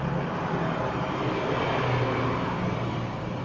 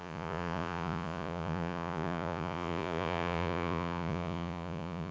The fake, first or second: second